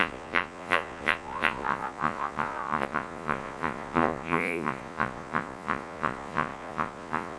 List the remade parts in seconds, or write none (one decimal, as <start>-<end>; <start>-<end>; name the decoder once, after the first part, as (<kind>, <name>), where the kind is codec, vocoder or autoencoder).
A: 0.0-7.4 (vocoder, Vocos)